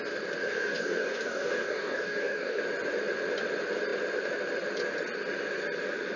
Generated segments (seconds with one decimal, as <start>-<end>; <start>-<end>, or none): 0.4-2.6